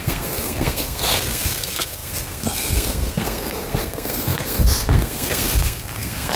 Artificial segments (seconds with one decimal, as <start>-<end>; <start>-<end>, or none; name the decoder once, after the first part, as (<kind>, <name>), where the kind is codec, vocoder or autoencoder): 0.0-6.4 (codec, SNAC)